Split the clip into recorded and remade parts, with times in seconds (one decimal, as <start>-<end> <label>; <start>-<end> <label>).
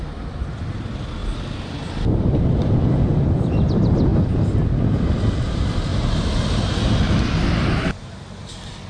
0.0-8.9 recorded